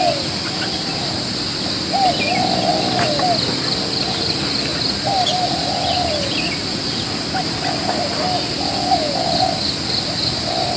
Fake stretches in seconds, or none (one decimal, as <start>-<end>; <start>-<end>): none